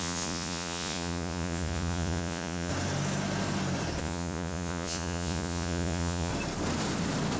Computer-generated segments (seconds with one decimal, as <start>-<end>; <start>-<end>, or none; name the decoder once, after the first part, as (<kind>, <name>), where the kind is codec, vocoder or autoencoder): 0.0-2.7 (vocoder, Vocos); 4.0-6.3